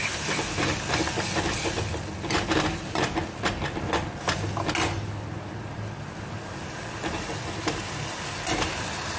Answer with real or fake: real